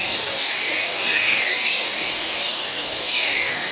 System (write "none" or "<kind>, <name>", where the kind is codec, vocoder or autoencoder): codec, DAC